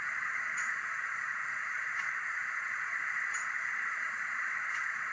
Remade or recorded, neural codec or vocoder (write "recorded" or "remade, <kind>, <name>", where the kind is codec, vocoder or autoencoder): remade, vocoder, Vocos